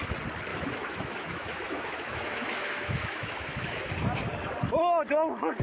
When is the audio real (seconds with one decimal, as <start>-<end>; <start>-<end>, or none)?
0.0-0.5; 3.9-5.6